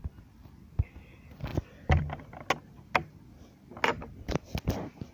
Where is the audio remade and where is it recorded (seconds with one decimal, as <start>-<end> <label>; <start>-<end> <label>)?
0.0-5.1 recorded